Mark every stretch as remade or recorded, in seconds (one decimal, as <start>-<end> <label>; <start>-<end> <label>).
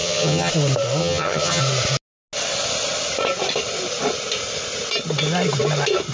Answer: 0.0-0.5 remade; 0.5-1.0 recorded; 1.0-1.6 remade; 1.6-6.1 recorded